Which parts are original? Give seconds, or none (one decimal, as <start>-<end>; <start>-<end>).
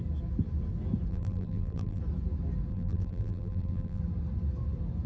0.0-1.1; 2.0-2.7; 4.0-5.1